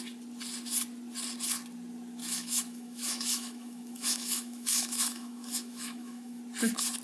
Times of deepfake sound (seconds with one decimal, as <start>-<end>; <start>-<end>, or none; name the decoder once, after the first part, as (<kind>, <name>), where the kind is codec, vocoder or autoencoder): 2.2-6.4 (autoencoder, DAC-VAE)